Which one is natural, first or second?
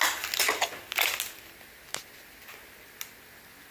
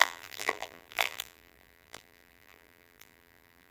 first